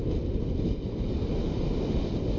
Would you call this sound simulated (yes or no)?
no